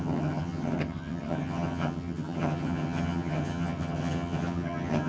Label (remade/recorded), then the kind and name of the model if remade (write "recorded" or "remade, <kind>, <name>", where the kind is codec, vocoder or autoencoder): remade, vocoder, HiFi-GAN